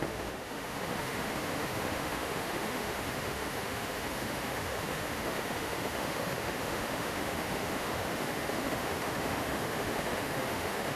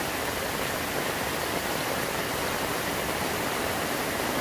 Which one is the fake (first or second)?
first